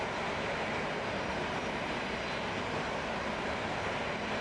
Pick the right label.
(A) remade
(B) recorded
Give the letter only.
B